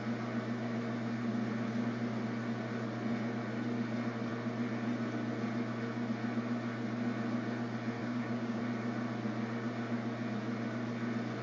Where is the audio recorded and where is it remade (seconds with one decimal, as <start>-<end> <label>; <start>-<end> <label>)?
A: 0.0-8.0 recorded; 8.0-8.6 remade; 8.6-11.4 recorded